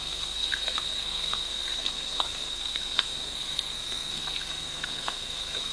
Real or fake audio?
fake